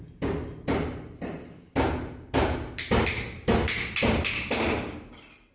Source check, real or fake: real